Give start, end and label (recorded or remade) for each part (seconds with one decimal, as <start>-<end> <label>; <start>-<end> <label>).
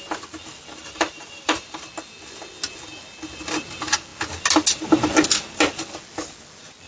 0.0-0.8 recorded; 0.8-1.8 remade; 1.8-6.9 recorded